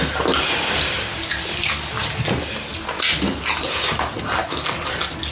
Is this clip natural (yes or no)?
yes